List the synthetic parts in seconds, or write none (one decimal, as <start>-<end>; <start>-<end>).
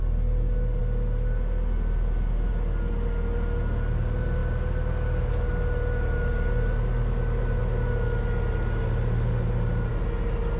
none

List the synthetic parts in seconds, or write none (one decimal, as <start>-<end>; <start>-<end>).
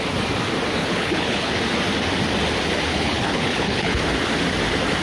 0.8-1.5; 2.9-4.0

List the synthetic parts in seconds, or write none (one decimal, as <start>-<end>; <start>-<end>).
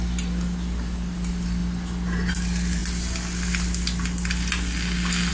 none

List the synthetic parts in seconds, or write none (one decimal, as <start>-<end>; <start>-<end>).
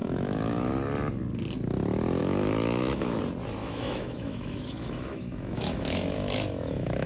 0.0-0.7; 2.2-3.2; 3.6-7.1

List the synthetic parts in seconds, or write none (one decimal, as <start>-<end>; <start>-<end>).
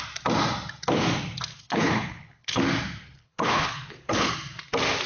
1.5-2.6; 3.0-4.3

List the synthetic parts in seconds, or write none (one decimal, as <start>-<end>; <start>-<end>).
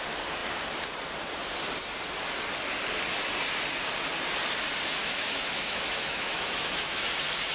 5.0-7.0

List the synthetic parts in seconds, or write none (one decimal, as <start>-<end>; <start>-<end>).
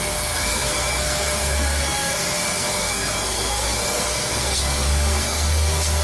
0.0-6.0